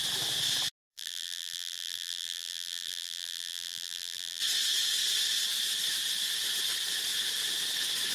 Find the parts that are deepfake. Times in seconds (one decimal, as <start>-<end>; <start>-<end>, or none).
0.9-4.4